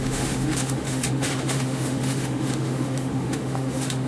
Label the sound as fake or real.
fake